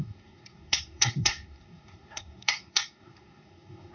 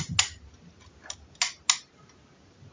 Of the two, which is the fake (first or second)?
first